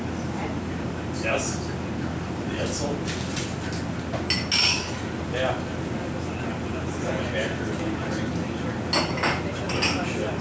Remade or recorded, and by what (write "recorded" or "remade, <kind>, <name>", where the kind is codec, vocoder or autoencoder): recorded